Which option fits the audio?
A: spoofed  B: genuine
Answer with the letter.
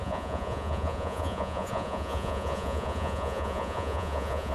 A